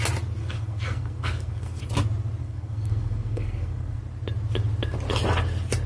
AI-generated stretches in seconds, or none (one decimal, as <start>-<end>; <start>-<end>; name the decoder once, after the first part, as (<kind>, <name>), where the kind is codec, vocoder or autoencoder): 0.4-1.8 (codec, SNAC); 2.4-4.0